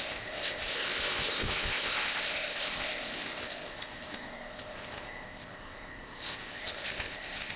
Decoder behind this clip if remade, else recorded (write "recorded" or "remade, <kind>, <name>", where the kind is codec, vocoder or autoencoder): remade, codec, ZipCodec